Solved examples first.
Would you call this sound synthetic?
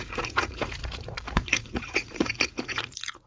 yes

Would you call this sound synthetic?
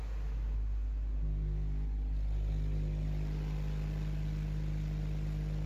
no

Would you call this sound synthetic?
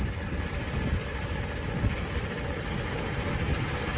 yes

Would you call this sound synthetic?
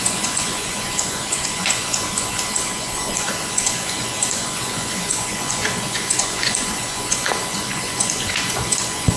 yes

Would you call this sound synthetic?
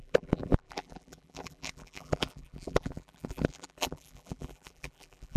yes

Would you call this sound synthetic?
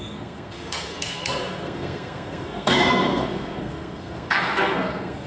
yes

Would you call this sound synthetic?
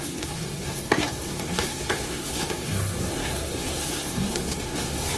yes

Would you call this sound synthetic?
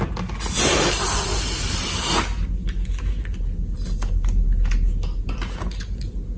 no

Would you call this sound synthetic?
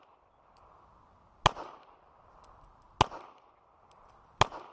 no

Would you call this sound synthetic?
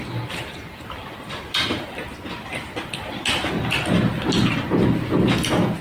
no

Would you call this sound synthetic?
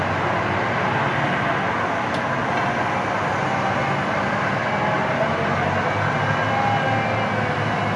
no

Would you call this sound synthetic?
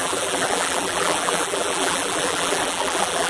yes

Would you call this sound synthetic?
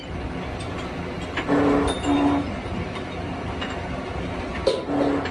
no